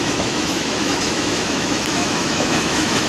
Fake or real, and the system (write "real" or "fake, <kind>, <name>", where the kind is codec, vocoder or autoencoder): fake, autoencoder, DAC-VAE